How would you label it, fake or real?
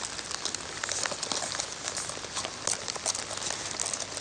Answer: real